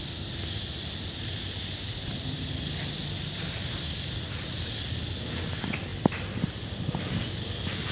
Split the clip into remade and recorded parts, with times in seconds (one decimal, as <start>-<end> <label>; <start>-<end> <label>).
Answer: 0.0-7.9 recorded